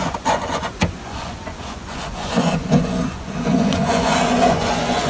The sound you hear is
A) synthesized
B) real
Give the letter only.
A